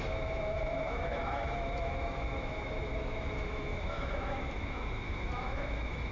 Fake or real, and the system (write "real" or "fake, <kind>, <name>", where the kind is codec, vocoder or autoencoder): fake, autoencoder, DAC-VAE